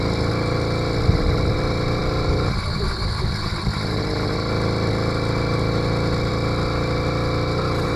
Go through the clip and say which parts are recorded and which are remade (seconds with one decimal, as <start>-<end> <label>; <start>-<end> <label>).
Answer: 0.0-8.0 recorded